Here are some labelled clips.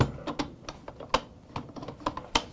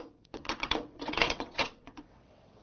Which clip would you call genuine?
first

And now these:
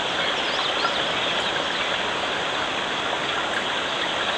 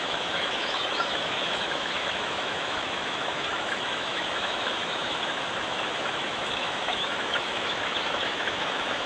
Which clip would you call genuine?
first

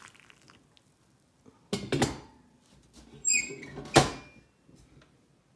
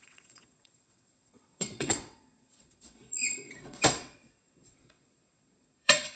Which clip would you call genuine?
first